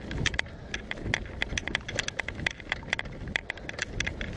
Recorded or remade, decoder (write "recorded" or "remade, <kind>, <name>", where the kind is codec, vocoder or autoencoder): recorded